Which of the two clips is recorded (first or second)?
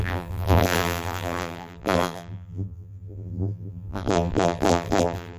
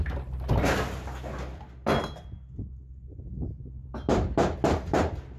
second